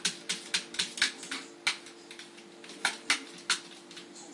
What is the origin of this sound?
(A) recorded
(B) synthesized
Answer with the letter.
A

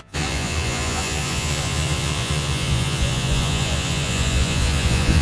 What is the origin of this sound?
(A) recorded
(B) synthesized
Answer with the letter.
B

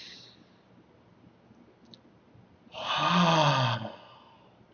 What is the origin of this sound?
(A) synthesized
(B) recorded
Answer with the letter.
B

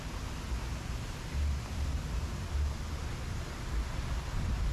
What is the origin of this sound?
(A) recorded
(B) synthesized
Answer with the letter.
A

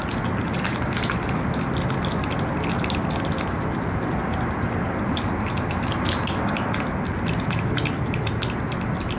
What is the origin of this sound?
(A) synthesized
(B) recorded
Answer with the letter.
B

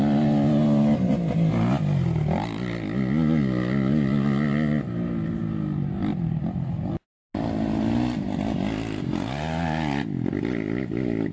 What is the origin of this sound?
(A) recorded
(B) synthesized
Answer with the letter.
A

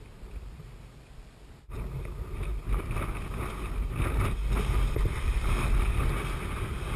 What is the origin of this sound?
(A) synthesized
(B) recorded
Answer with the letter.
B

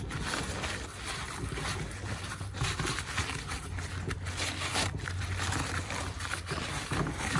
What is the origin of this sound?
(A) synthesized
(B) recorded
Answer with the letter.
B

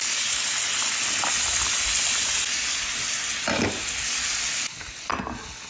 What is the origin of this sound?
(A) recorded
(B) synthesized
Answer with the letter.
A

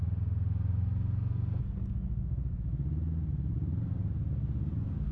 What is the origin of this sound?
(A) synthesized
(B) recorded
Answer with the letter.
B